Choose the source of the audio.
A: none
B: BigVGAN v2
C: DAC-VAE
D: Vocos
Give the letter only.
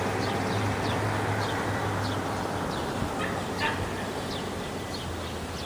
A